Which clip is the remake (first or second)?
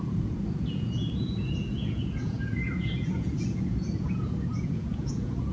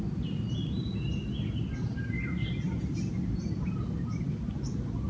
first